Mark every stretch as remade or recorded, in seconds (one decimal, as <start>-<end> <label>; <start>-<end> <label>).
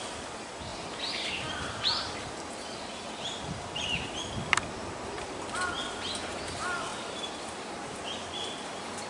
0.0-0.7 recorded; 0.7-4.2 remade; 4.2-6.9 recorded; 6.9-8.7 remade; 8.7-9.1 recorded